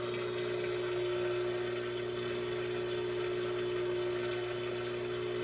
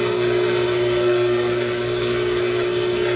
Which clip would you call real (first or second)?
first